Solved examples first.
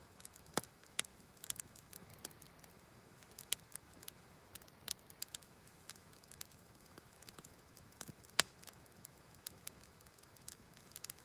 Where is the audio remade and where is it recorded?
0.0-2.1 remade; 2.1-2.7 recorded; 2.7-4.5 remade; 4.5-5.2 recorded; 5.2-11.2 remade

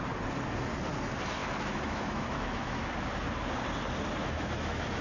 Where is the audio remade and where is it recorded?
0.0-1.4 recorded; 1.4-2.8 remade; 2.8-4.2 recorded; 4.2-5.0 remade

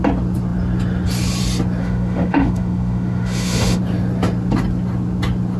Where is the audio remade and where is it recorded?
0.0-1.8 recorded; 1.8-3.8 remade; 3.8-5.6 recorded

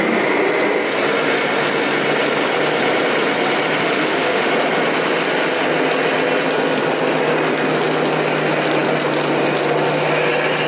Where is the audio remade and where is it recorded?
0.0-3.8 recorded; 3.8-4.5 remade; 4.5-10.7 recorded

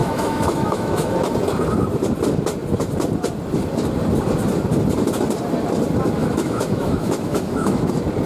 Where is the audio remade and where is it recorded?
0.0-1.1 remade; 1.1-6.2 recorded; 6.2-7.9 remade; 7.9-8.3 recorded